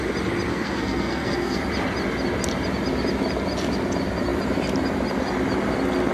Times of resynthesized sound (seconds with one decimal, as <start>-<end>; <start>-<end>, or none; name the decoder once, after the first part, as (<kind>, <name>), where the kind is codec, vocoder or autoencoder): 0.5-1.6 (codec, SNAC)